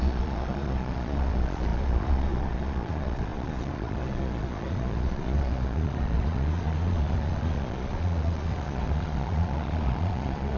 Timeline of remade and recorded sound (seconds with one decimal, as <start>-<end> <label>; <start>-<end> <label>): 0.0-10.6 remade